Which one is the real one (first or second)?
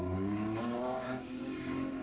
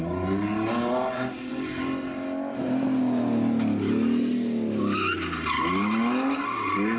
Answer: second